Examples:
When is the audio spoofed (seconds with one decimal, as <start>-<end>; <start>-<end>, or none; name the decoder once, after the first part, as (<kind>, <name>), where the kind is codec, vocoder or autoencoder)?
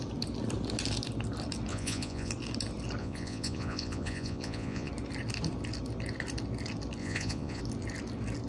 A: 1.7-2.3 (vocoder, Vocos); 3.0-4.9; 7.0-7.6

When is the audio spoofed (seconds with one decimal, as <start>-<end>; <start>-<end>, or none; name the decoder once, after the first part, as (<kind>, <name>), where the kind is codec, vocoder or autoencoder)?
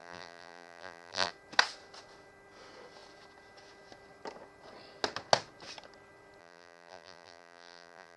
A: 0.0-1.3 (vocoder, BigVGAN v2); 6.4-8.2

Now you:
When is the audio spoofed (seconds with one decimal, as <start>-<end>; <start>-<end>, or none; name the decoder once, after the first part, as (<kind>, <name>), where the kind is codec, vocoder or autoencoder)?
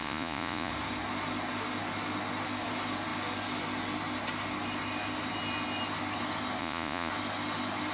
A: 0.0-0.7 (vocoder, Vocos); 6.6-7.1